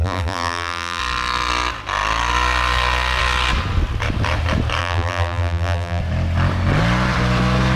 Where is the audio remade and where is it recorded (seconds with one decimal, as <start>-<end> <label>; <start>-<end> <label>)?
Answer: 0.0-1.0 remade; 1.0-4.8 recorded; 4.8-6.0 remade; 6.0-7.8 recorded